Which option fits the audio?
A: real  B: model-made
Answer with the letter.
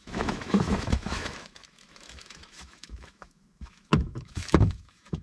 B